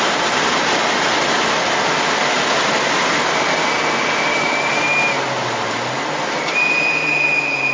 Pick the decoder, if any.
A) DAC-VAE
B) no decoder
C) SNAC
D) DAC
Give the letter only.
B